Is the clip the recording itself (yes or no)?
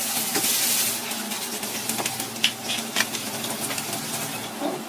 yes